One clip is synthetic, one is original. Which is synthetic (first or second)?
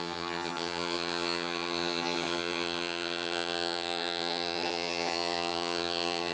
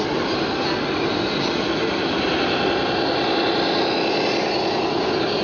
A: first